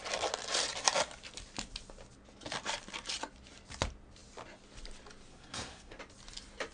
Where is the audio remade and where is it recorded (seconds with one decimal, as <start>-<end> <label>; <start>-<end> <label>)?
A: 0.0-5.3 recorded; 5.3-6.0 remade; 6.0-6.7 recorded